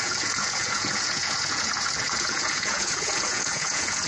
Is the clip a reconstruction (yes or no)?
yes